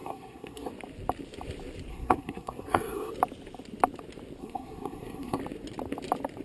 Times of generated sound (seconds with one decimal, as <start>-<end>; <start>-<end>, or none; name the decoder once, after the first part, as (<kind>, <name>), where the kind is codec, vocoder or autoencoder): 0.0-0.7 (codec, SNAC); 1.9-3.1; 4.4-5.4